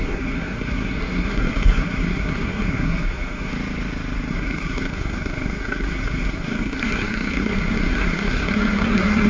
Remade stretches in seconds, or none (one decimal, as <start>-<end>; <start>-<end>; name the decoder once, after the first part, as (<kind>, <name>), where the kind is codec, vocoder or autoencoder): 0.0-3.5 (codec, SNAC); 4.3-9.3